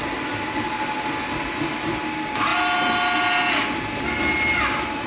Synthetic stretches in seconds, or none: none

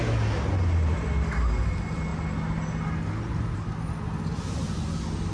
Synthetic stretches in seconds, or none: none